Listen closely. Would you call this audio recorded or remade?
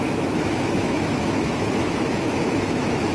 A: remade